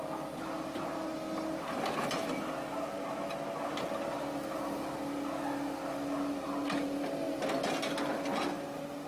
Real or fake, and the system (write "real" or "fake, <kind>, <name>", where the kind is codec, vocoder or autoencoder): real